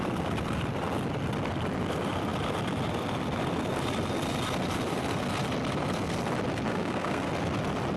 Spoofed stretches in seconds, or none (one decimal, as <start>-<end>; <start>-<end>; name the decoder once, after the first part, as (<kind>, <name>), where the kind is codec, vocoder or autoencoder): 6.7-7.3 (codec, SNAC)